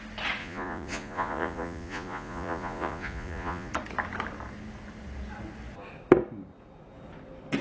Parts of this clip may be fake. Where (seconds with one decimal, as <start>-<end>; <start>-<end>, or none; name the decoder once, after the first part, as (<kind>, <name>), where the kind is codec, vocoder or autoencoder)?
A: 0.4-3.7 (vocoder, Vocos)